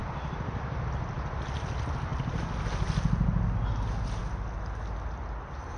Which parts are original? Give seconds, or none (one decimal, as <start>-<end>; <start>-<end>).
0.0-5.8